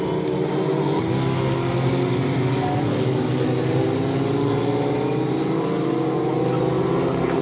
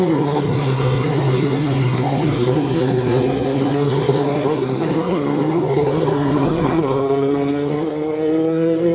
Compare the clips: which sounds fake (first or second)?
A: second